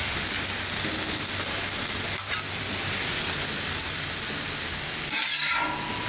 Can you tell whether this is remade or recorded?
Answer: recorded